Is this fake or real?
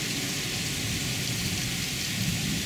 real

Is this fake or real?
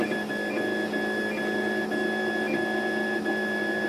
real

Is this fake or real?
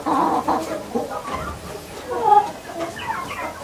real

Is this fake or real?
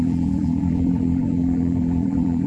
fake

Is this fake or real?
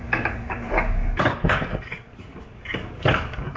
fake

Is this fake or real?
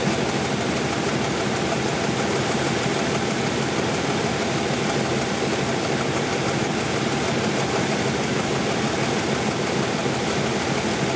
real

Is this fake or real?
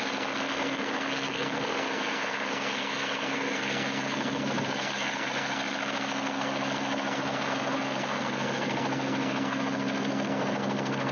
fake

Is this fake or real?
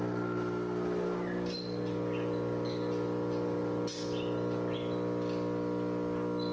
real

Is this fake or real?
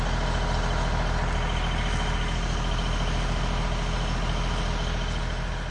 real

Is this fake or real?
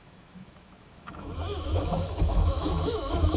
fake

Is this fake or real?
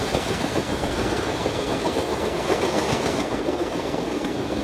fake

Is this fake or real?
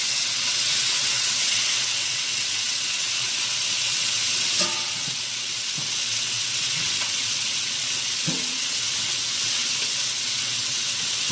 fake